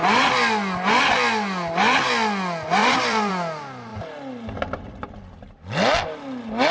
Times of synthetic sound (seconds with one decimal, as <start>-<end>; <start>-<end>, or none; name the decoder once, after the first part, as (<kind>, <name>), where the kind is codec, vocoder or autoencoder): 2.8-3.3 (vocoder, BigVGAN v2); 3.9-4.8